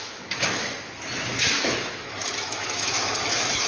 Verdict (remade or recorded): remade